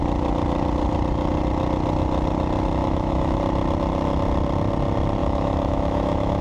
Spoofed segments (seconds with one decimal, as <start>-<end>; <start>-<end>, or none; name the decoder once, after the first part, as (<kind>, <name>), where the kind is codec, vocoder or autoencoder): 2.8-3.4 (autoencoder, DAC-VAE); 5.2-6.4